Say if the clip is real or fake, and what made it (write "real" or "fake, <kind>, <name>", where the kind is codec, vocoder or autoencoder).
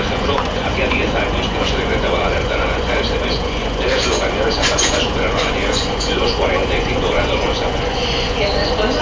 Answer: fake, vocoder, Vocos